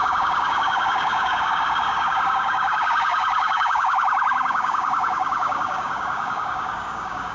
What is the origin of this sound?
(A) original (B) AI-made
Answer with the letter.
B